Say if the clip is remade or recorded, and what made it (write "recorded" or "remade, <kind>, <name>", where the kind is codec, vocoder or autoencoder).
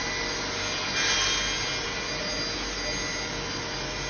recorded